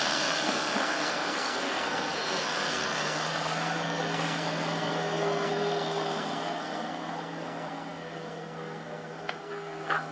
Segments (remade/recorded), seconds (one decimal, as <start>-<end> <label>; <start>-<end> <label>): 0.0-10.1 remade